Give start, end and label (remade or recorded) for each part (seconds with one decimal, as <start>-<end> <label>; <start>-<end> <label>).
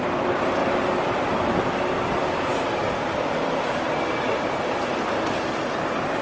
0.0-6.2 recorded